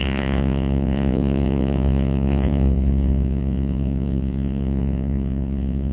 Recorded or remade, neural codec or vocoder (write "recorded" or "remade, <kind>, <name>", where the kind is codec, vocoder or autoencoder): remade, vocoder, Vocos